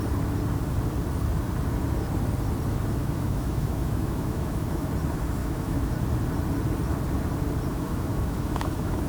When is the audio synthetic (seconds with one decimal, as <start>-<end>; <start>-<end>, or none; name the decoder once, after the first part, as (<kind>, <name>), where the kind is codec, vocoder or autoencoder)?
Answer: 3.0-4.9 (autoencoder, DAC-VAE); 5.4-5.9; 7.7-9.1